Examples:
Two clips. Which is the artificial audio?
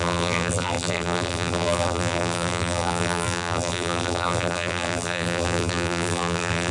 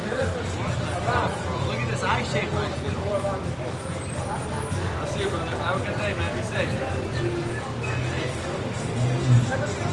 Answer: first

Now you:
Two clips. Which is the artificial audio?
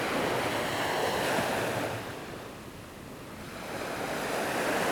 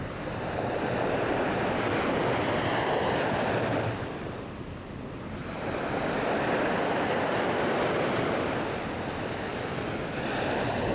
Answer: second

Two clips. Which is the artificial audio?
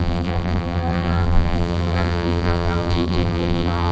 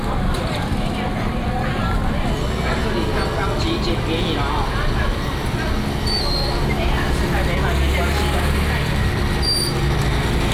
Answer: first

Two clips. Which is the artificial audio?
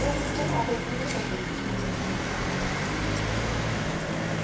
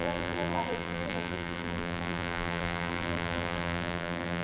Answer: second